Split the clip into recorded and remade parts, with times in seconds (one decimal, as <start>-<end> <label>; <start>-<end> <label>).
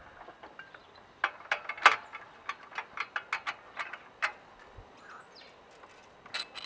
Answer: 0.0-6.7 recorded